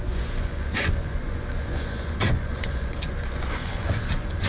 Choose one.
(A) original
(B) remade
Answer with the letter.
B